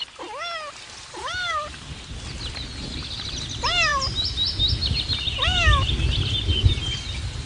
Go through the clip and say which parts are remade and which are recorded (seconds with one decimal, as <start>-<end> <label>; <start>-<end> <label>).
0.0-7.5 recorded